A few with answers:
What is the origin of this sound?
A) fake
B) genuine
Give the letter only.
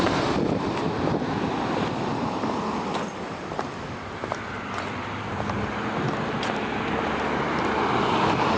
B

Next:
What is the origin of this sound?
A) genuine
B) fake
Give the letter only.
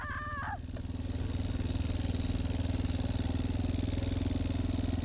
A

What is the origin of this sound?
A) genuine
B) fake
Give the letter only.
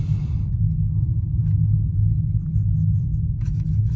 A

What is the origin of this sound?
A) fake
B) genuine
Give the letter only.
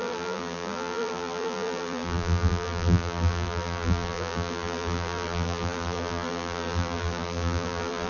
A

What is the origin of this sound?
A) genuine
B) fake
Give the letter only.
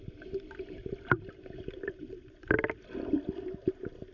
A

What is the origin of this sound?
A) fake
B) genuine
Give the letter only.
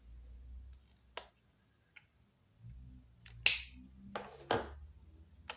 B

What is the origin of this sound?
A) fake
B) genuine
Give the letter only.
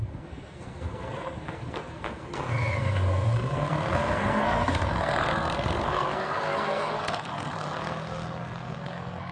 A